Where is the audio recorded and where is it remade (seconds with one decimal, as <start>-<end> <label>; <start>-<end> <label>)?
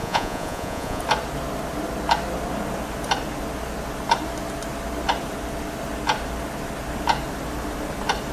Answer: 0.0-1.0 remade; 1.0-8.3 recorded